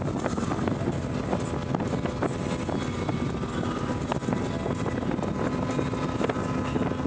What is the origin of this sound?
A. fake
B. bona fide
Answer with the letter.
B